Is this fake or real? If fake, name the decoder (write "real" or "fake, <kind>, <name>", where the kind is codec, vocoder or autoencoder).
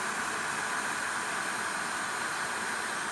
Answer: real